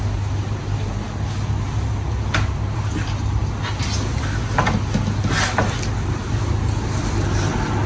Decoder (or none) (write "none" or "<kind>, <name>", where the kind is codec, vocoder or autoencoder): none